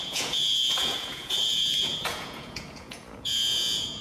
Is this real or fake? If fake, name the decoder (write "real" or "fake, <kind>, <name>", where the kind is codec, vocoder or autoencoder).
fake, vocoder, Vocos